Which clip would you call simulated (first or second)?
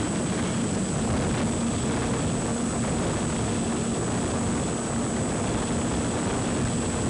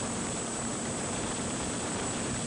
second